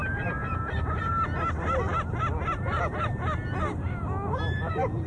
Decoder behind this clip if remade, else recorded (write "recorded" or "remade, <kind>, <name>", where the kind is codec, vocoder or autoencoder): recorded